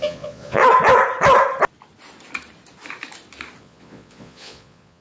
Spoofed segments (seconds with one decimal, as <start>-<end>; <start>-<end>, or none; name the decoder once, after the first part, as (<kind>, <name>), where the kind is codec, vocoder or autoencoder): 0.0-0.6 (vocoder, Vocos); 3.6-5.0